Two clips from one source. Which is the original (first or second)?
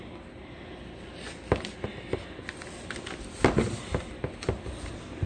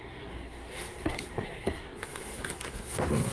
first